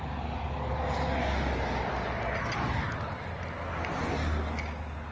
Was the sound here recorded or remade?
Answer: recorded